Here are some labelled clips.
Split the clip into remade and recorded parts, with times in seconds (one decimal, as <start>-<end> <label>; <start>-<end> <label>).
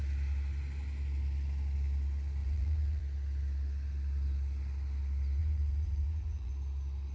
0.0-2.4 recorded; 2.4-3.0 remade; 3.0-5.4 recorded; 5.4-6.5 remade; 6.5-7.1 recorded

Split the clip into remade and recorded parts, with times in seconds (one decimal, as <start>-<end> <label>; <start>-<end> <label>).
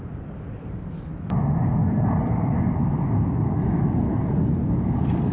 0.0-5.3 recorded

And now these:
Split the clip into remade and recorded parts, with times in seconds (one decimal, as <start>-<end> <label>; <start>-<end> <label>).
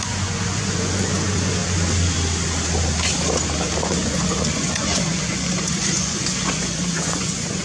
0.0-1.6 remade; 1.6-3.8 recorded; 3.8-7.6 remade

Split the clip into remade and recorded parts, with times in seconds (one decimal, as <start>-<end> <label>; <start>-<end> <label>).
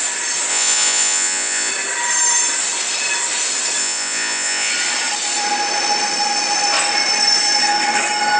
0.0-0.5 recorded; 0.5-1.7 remade; 1.7-3.8 recorded; 3.8-4.7 remade; 4.7-8.4 recorded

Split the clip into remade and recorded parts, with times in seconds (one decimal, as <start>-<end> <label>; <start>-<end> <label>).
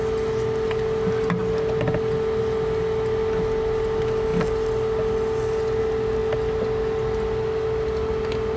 0.0-8.6 recorded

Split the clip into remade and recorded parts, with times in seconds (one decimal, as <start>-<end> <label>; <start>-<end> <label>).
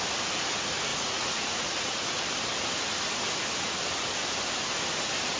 0.0-0.9 recorded; 0.9-2.2 remade; 2.2-5.4 recorded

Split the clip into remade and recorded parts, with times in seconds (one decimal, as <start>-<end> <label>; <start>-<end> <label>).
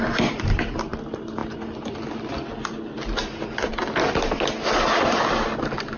0.0-6.0 recorded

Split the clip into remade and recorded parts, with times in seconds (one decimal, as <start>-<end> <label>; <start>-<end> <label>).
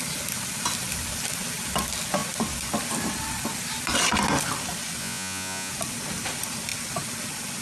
0.0-5.0 recorded; 5.0-5.7 remade; 5.7-7.6 recorded